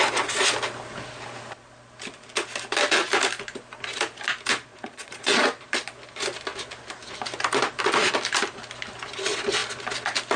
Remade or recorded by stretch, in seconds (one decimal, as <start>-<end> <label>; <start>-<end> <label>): 0.0-4.7 recorded; 4.7-5.4 remade; 5.4-10.4 recorded